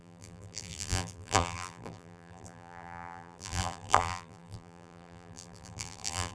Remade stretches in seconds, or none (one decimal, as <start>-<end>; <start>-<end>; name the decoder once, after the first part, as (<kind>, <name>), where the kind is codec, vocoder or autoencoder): 0.0-6.3 (vocoder, BigVGAN v2)